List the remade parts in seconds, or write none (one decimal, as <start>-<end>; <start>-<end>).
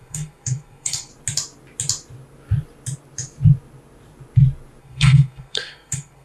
0.0-1.1; 4.8-6.2